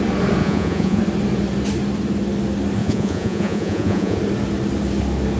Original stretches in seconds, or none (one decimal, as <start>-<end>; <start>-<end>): 0.0-0.4; 1.0-2.8; 4.2-5.4